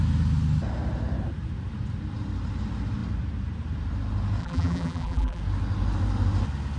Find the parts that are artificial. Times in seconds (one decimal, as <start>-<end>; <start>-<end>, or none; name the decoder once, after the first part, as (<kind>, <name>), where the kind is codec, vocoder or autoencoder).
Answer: 4.4-5.4 (vocoder, BigVGAN v2)